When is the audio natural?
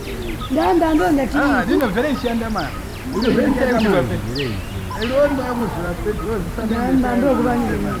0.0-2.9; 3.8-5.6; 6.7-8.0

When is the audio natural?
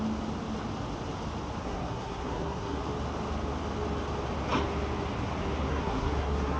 0.0-1.6; 2.8-5.7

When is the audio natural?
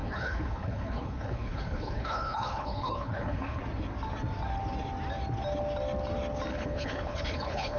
3.6-6.5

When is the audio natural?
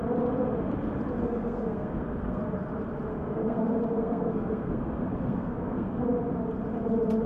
0.0-1.2; 2.4-3.1; 6.0-7.3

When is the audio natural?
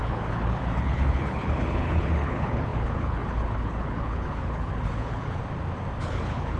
5.4-6.0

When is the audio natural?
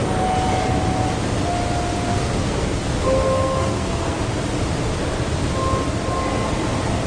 0.0-2.1; 4.2-7.1